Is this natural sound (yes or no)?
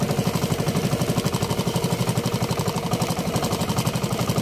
yes